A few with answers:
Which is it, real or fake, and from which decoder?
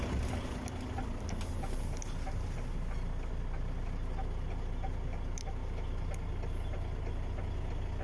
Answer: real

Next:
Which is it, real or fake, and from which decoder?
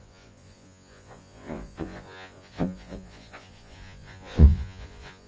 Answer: fake, vocoder, Vocos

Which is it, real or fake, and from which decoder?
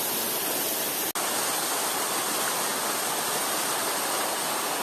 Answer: real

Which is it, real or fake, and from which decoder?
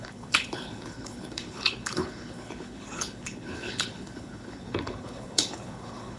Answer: fake, codec, HILCodec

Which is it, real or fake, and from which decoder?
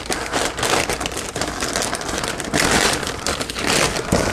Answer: real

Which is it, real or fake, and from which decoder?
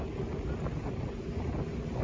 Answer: real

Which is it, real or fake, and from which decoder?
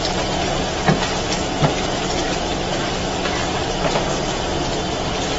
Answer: real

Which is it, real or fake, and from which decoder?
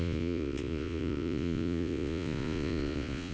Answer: fake, vocoder, Vocos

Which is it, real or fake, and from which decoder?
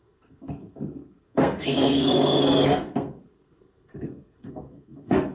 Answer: fake, codec, SNAC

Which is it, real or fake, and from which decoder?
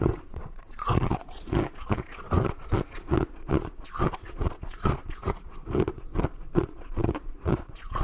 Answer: fake, vocoder, Vocos